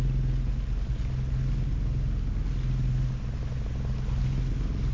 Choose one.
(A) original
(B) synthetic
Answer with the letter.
A